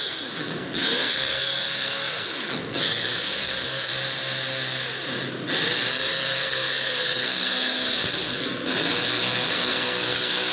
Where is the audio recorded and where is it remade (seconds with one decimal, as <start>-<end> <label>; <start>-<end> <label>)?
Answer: 0.0-3.9 remade; 3.9-5.9 recorded; 5.9-10.5 remade